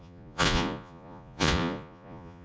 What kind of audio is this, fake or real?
fake